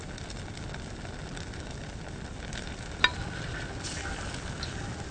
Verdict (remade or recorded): recorded